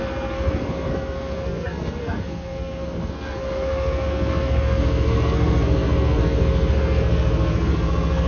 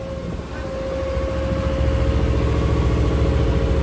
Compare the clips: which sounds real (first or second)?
second